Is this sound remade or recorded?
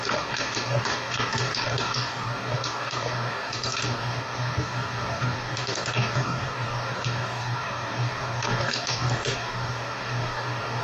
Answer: remade